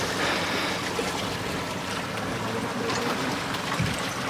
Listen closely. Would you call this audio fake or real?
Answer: real